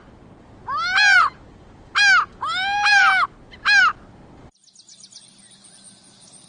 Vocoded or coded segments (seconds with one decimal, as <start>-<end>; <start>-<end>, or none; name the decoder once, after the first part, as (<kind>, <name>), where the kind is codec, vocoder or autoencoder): none